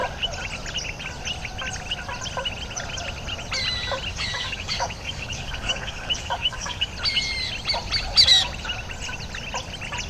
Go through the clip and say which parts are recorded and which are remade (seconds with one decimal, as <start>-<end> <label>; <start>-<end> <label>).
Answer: 0.0-4.1 recorded; 4.1-6.9 remade; 6.9-10.1 recorded